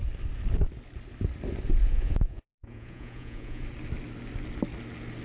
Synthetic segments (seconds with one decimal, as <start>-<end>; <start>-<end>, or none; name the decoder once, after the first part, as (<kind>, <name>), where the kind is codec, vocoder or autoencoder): 1.8-3.6 (vocoder, Vocos)